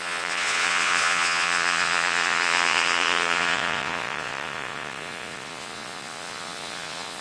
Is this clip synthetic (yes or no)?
yes